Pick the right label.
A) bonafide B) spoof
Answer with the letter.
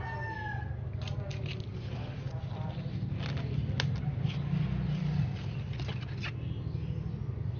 A